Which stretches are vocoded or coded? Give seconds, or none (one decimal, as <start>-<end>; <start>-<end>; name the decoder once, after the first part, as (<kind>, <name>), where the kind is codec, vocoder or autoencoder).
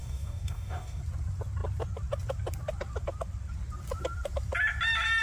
0.0-1.0 (codec, DAC)